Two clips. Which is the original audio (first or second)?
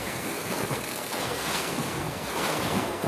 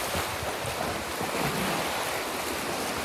second